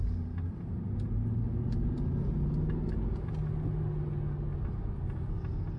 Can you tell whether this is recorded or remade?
recorded